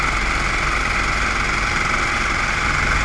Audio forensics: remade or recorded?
recorded